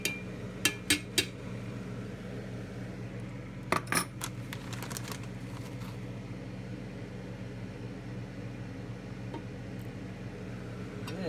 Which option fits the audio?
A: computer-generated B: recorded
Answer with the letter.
B